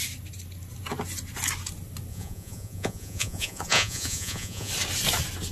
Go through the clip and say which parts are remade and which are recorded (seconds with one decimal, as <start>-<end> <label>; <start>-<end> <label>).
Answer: 0.0-2.1 recorded; 2.1-4.7 remade; 4.7-5.5 recorded